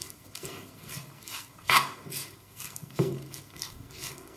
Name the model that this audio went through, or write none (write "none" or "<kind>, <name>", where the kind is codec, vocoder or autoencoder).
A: codec, SNAC